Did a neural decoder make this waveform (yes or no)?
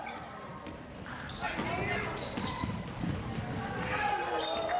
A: no